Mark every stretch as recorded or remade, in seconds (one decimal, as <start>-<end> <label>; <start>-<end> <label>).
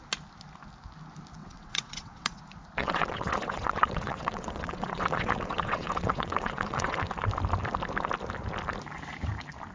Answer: 0.0-1.4 recorded; 1.4-2.4 remade; 2.4-2.8 recorded; 2.8-7.0 remade; 7.0-9.7 recorded